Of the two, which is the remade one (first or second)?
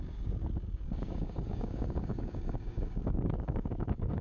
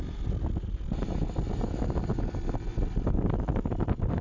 first